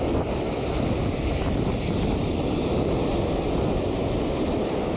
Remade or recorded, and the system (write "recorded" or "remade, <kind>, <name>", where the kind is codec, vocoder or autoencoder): recorded